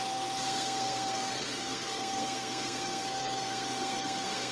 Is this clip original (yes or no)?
no